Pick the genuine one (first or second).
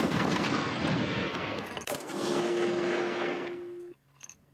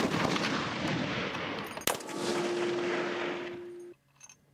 second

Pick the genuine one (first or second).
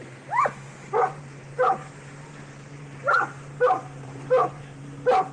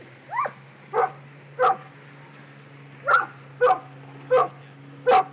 second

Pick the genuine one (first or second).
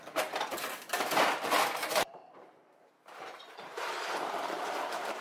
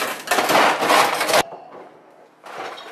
second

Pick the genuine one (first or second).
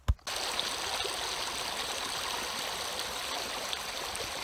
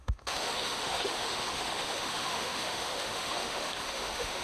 first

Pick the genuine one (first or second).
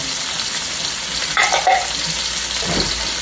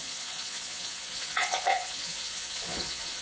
first